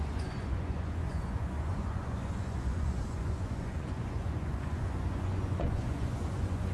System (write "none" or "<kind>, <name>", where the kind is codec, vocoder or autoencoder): vocoder, Vocos